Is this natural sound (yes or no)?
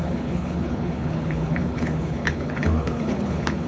no